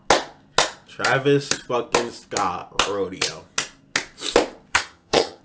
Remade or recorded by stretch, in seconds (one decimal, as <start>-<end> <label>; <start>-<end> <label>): 0.0-4.7 recorded; 4.7-5.4 remade